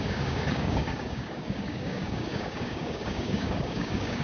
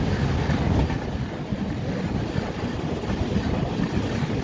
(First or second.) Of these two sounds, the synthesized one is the first